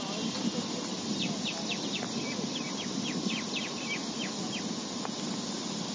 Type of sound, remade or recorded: remade